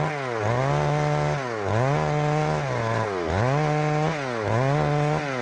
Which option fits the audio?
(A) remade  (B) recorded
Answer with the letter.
B